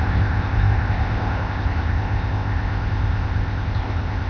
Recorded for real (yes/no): no